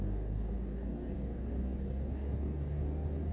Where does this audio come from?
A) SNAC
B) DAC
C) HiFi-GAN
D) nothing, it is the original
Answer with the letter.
B